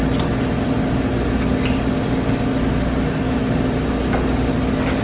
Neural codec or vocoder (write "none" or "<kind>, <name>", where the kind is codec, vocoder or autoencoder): none